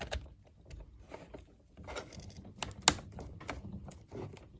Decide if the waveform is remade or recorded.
recorded